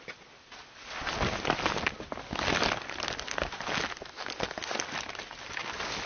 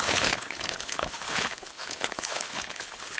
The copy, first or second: second